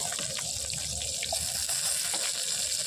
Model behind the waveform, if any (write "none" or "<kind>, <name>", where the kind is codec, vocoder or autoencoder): none